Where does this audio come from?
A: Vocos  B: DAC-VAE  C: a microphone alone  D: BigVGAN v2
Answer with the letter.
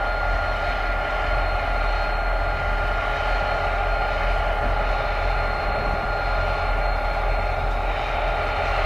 C